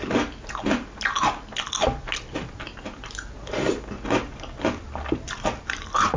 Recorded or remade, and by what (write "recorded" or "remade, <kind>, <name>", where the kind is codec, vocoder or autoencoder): recorded